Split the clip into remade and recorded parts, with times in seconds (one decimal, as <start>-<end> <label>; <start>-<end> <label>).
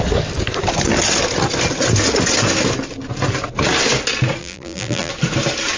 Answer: 0.0-4.4 recorded; 4.4-5.1 remade; 5.1-5.8 recorded